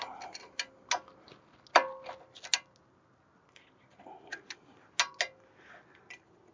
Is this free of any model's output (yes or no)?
yes